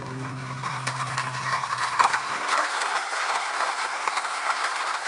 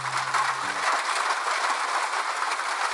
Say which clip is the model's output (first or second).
first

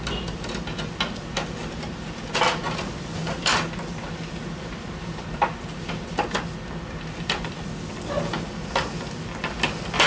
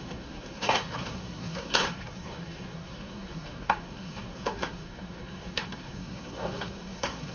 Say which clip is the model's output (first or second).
second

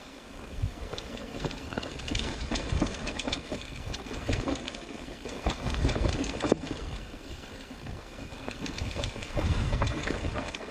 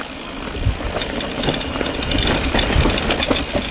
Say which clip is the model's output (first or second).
first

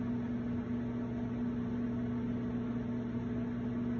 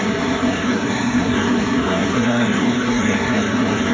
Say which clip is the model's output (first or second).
second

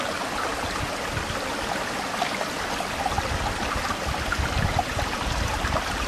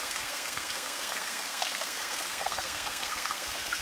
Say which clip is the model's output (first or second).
second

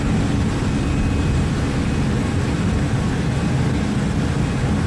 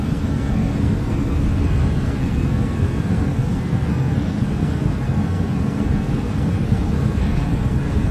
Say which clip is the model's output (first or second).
second